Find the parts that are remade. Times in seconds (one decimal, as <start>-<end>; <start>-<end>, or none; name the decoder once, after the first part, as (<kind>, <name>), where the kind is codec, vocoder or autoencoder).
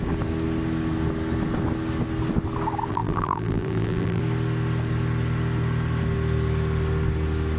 2.9-4.2 (vocoder, BigVGAN v2)